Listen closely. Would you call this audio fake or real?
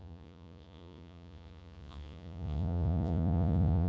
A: fake